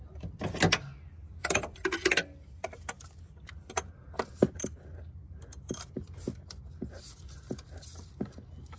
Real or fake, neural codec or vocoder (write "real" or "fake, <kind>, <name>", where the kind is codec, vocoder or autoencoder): real